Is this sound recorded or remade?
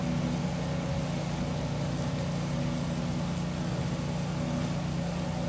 recorded